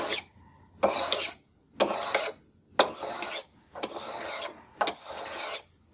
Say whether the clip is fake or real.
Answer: real